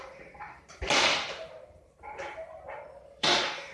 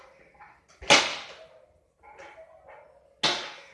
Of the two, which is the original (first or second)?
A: second